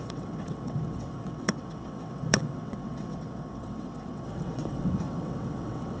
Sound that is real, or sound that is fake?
fake